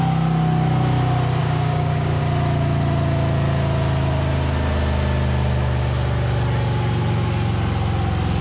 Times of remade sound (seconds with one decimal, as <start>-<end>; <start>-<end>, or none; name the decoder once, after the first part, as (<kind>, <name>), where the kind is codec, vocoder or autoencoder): 1.4-2.2 (codec, DAC)